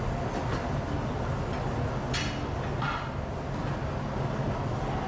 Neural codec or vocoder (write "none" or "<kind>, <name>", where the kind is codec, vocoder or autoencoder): none